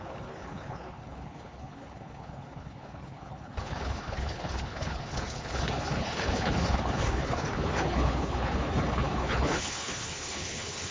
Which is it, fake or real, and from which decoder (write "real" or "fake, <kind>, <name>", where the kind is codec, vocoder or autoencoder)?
fake, codec, HILCodec